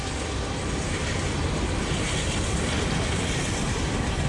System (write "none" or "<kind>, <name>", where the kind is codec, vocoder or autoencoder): none